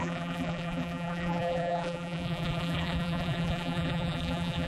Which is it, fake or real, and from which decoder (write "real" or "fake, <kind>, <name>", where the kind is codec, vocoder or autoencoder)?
fake, vocoder, BigVGAN v2